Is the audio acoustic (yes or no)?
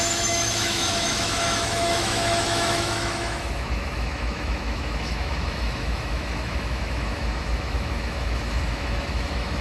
no